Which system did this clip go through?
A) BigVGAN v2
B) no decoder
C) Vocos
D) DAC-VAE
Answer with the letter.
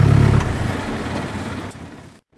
B